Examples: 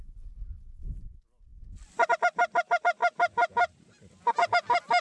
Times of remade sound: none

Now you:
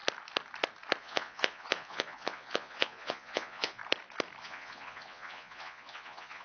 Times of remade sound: 1.0-3.8 (vocoder, Vocos); 4.4-6.4

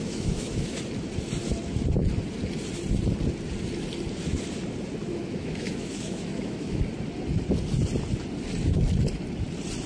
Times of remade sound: 0.0-0.8 (autoencoder, DAC-VAE); 5.1-6.8